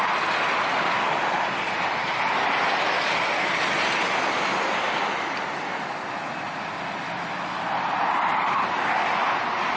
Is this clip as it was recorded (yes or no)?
yes